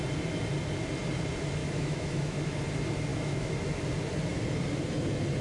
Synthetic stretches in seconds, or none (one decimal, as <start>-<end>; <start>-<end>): 1.6-2.6; 3.1-3.8